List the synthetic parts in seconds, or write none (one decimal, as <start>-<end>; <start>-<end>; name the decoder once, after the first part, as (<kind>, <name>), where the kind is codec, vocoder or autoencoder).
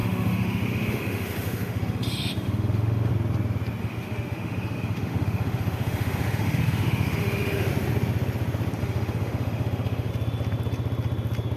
0.0-3.1 (autoencoder, DAC-VAE); 3.8-7.7; 8.8-10.1